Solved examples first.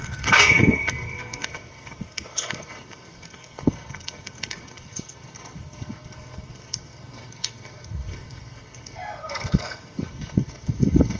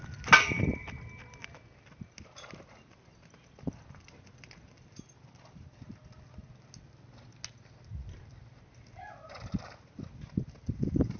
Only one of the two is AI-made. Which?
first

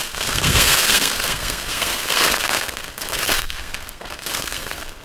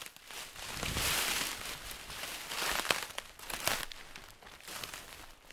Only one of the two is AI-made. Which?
first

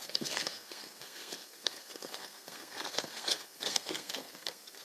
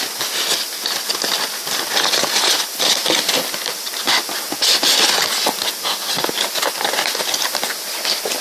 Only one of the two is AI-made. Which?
first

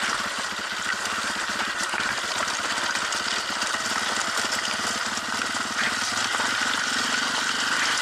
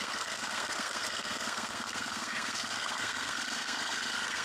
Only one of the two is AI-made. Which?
second